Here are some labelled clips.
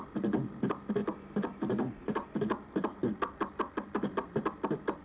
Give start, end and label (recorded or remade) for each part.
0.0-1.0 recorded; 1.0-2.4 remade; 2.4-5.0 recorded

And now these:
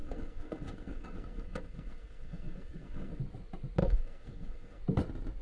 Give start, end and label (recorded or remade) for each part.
0.0-3.2 remade; 3.2-3.8 recorded; 3.8-4.8 remade; 4.8-5.4 recorded